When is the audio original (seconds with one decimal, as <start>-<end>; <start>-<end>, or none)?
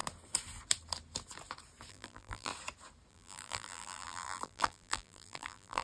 0.0-1.9; 2.5-3.1